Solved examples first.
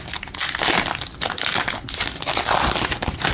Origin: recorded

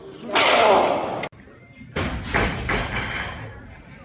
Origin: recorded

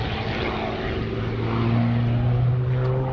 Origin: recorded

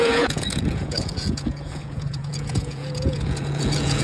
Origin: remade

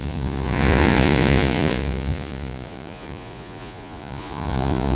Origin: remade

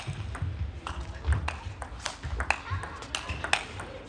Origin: recorded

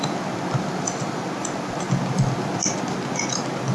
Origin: recorded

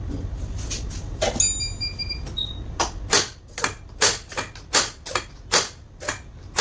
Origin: recorded